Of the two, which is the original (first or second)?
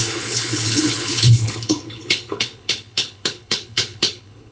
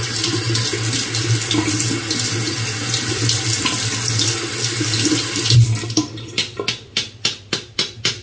second